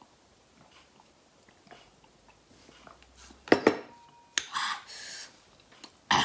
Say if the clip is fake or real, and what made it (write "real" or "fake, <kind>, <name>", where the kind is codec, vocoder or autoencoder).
real